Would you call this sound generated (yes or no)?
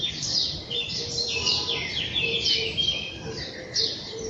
yes